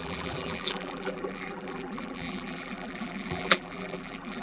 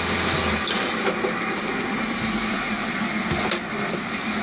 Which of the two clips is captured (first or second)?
second